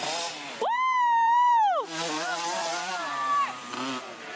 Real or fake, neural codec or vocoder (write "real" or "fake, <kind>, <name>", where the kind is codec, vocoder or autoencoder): fake, vocoder, BigVGAN v2